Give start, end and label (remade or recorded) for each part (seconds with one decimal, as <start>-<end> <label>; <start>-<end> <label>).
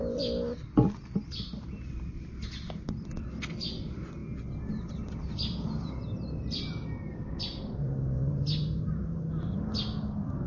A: 0.0-10.5 recorded